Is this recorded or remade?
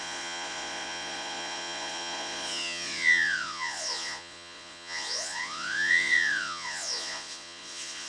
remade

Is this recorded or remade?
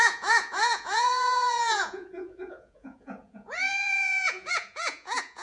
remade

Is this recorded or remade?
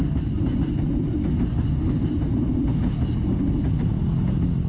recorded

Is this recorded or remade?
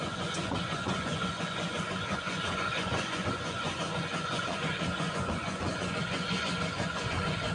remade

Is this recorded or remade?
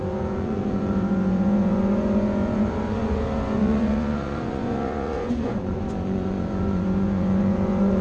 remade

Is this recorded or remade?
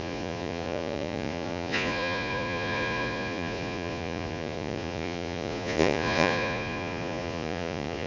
remade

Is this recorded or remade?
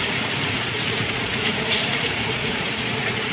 remade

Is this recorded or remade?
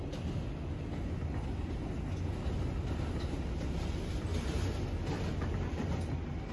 recorded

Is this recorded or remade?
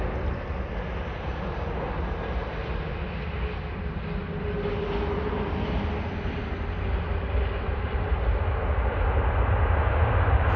recorded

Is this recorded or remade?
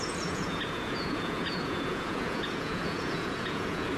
remade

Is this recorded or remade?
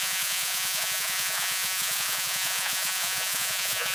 remade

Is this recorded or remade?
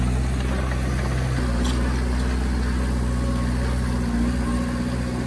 recorded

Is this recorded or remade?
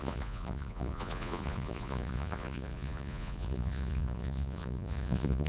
remade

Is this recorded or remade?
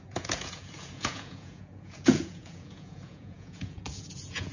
remade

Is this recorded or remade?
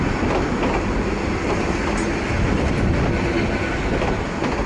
recorded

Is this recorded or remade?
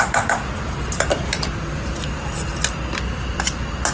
recorded